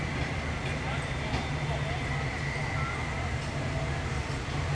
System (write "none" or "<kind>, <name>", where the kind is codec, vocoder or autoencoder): none